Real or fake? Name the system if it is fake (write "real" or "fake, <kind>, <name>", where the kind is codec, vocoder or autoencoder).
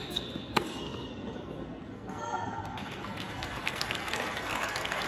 fake, codec, SNAC